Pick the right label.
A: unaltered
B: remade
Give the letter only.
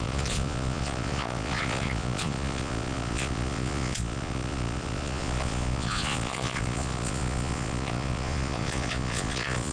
B